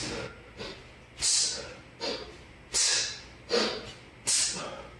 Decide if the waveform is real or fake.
real